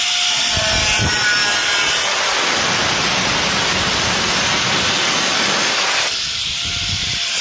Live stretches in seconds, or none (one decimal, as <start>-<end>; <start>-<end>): none